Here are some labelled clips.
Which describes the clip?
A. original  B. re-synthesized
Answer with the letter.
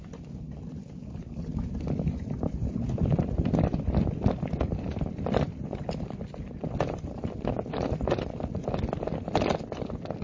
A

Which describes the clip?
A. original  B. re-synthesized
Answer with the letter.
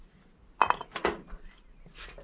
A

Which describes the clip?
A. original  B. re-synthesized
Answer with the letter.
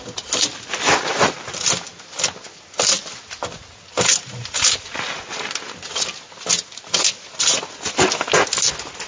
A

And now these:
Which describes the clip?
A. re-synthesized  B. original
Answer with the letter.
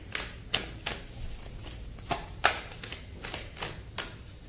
B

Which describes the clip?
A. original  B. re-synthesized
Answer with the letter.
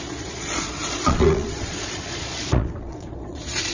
B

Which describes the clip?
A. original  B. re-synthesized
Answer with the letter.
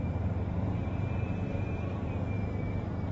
B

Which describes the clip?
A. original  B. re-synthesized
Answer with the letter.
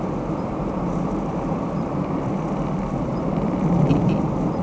B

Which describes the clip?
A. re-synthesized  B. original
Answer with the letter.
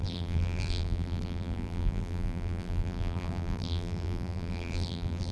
A